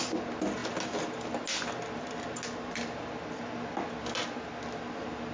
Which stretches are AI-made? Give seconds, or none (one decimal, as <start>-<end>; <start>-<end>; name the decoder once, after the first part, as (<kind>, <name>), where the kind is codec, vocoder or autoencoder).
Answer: none